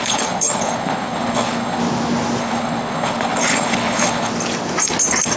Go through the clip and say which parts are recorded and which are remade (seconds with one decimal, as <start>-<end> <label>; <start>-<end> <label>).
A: 0.0-1.8 remade; 1.8-2.4 recorded; 2.4-4.3 remade; 4.3-5.4 recorded